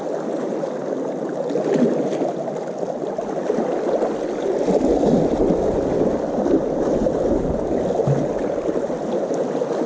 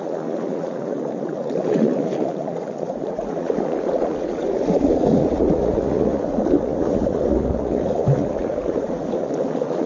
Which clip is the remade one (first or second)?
second